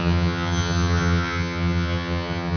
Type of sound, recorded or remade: remade